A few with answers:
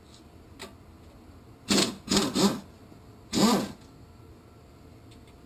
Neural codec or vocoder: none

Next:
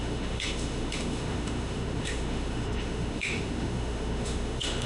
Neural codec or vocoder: autoencoder, DAC-VAE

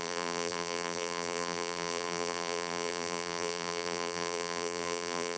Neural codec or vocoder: vocoder, BigVGAN v2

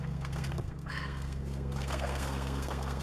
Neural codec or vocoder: codec, SNAC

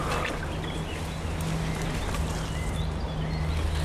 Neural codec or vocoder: none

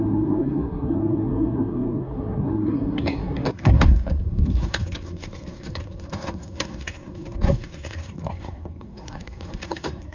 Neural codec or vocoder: codec, SNAC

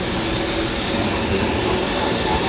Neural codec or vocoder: none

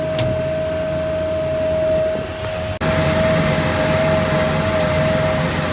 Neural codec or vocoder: none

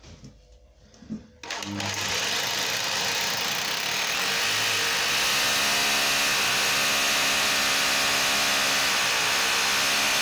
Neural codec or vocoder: none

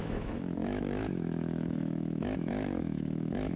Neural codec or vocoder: autoencoder, DAC-VAE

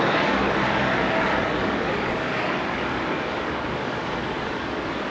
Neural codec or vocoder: codec, DAC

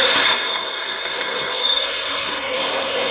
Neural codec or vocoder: codec, SNAC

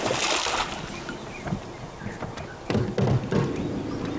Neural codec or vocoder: none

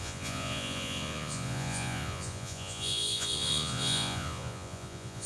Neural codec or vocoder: vocoder, Vocos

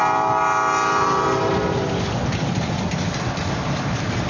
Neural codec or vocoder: none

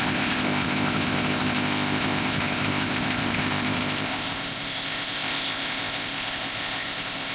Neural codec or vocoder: codec, ZipCodec